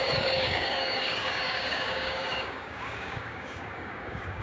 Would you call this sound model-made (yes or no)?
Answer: yes